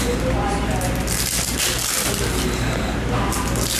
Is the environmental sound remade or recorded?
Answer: recorded